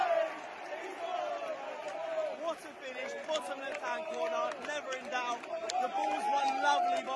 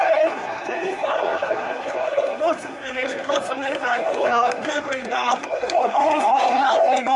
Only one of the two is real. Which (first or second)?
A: first